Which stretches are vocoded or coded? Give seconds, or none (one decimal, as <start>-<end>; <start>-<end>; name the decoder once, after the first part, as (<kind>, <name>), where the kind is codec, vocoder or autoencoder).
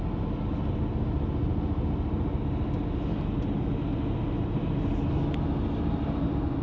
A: none